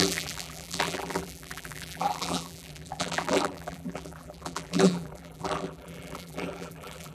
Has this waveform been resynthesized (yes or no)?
yes